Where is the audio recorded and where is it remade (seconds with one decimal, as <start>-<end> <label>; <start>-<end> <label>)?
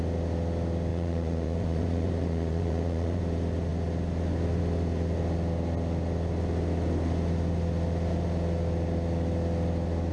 0.0-0.9 recorded; 0.9-3.2 remade; 3.2-10.1 recorded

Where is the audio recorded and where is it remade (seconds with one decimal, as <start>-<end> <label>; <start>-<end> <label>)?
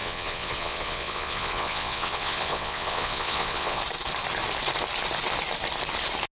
0.0-3.8 remade; 3.8-6.4 recorded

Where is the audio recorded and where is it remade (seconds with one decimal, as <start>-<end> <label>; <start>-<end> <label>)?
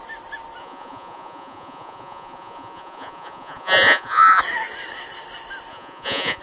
0.0-0.6 recorded; 0.6-4.4 remade; 4.4-5.7 recorded; 5.7-6.4 remade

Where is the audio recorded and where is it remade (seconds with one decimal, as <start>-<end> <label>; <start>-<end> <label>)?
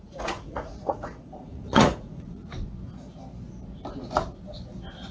0.0-2.5 remade; 2.5-5.1 recorded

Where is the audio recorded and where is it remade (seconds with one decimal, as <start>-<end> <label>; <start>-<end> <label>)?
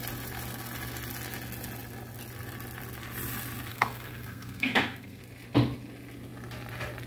0.0-3.7 recorded; 3.7-5.2 remade; 5.2-7.1 recorded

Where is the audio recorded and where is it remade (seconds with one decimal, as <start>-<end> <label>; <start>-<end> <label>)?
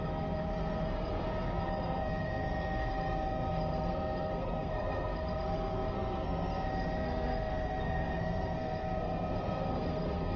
0.0-10.4 remade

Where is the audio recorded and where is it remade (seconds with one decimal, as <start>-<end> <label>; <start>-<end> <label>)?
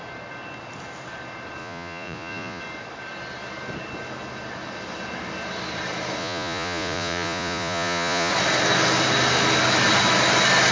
0.0-1.6 recorded; 1.6-2.6 remade; 2.6-6.2 recorded; 6.2-8.3 remade; 8.3-10.7 recorded